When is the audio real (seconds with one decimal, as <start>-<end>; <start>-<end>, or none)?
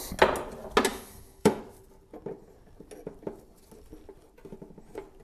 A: 0.0-0.9; 1.6-5.2